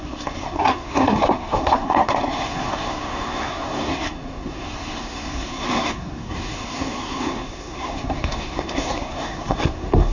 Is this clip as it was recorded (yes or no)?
no